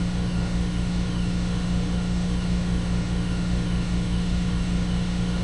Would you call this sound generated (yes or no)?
yes